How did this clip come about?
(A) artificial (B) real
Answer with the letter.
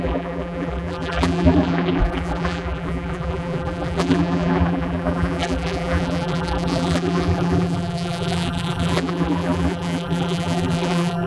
A